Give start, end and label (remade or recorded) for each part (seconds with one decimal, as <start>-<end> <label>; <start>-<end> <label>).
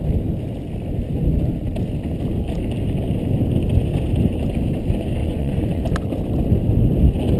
0.0-5.2 recorded; 5.2-5.8 remade; 5.8-7.4 recorded